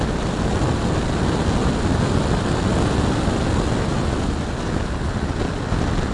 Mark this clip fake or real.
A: real